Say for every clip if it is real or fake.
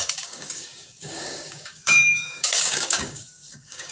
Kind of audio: fake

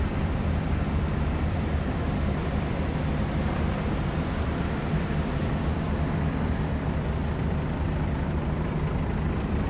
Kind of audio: fake